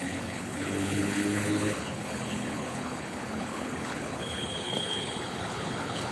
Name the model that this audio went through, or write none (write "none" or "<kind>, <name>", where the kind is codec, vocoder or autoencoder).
codec, HILCodec